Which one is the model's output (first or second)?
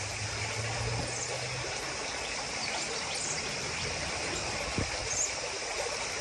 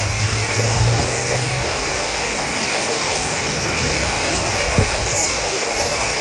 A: second